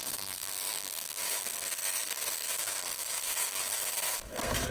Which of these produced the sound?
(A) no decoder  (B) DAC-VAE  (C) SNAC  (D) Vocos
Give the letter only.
C